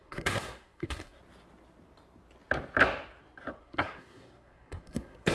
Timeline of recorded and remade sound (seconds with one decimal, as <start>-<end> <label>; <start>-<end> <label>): 0.0-1.2 remade; 1.2-3.6 recorded; 3.6-5.3 remade